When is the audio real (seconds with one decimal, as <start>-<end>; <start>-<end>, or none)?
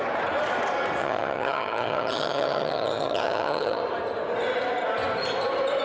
0.0-1.0; 3.8-5.8